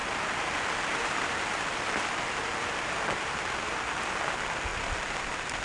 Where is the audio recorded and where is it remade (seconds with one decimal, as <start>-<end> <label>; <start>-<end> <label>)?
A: 0.0-5.6 recorded